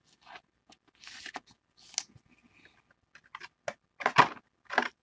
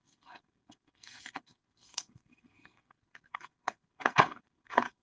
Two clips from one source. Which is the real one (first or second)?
first